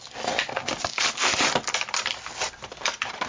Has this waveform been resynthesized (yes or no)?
no